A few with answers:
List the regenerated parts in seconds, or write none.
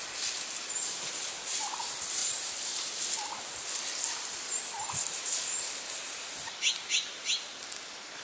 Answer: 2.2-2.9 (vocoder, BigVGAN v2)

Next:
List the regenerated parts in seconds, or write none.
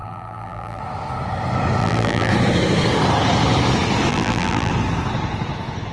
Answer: 0.0-0.8 (vocoder, BigVGAN v2); 1.8-2.3; 4.1-4.7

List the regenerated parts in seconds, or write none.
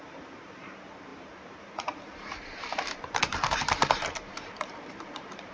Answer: 0.0-5.5 (vocoder, BigVGAN v2)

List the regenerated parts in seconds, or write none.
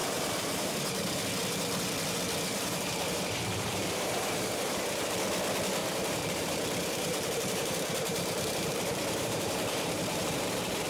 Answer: 0.0-1.3 (vocoder, BigVGAN v2); 2.5-5.1; 5.8-10.9